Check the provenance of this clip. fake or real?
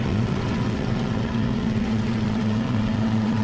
fake